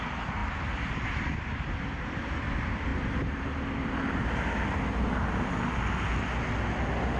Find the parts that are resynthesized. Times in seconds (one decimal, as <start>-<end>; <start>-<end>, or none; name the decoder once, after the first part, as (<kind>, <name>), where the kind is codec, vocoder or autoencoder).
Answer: 0.4-1.5 (vocoder, BigVGAN v2)

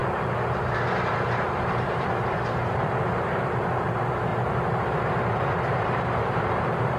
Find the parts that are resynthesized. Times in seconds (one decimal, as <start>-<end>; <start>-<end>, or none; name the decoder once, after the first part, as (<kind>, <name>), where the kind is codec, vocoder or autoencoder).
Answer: 1.1-4.3 (vocoder, BigVGAN v2); 5.2-7.0

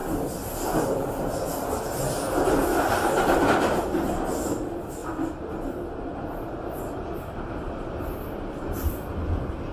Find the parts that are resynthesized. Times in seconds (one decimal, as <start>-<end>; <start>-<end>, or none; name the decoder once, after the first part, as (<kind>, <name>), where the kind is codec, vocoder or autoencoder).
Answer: none

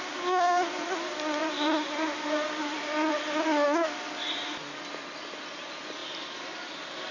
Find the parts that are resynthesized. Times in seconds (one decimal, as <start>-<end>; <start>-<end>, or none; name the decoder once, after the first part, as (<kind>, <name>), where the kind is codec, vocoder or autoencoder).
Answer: 1.4-3.1 (vocoder, BigVGAN v2)